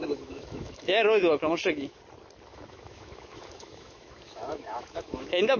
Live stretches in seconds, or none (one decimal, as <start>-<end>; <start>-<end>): 2.0-2.5